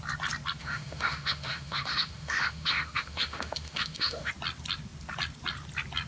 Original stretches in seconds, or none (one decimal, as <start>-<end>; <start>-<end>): 0.0-0.6; 4.3-6.1